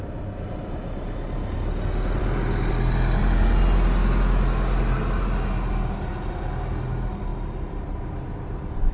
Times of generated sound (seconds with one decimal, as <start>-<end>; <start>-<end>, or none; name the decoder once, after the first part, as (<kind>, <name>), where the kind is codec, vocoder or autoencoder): none